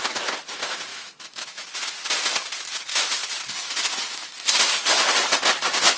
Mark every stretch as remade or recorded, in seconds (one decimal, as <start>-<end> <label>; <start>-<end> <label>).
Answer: 0.0-0.9 recorded; 0.9-1.6 remade; 1.6-6.0 recorded